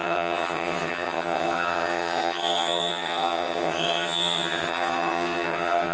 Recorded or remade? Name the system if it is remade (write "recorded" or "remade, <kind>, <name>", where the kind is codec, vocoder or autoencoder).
remade, vocoder, HiFi-GAN